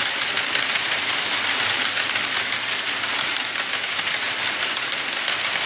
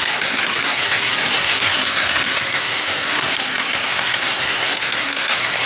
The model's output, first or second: second